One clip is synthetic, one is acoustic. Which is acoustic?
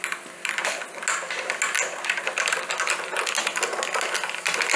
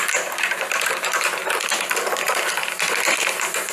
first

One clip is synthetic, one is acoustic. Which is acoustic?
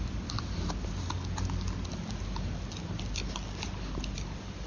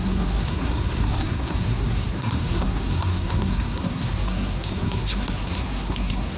first